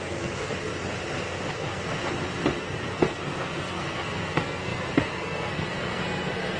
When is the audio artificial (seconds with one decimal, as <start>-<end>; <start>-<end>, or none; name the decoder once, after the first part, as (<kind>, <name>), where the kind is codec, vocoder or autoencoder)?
0.0-0.7 (codec, SNAC); 1.5-2.0; 2.6-6.6